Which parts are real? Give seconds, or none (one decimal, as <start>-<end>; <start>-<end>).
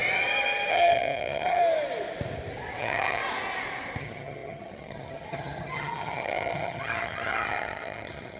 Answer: 0.0-0.7; 1.6-2.8; 3.2-4.0